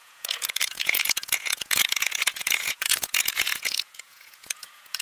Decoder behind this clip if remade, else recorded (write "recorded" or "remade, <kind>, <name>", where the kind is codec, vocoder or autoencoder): remade, vocoder, Vocos